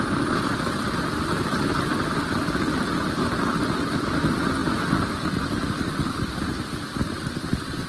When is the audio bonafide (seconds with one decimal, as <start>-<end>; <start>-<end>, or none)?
4.6-6.1